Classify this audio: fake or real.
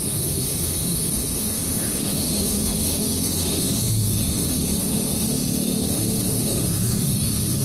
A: fake